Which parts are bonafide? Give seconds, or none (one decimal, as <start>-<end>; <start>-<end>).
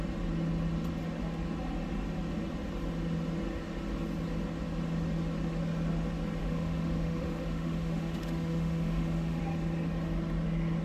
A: 0.0-6.4; 9.4-10.8